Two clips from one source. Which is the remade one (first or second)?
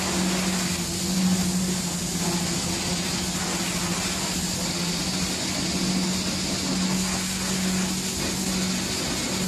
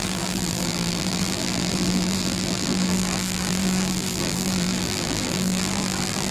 second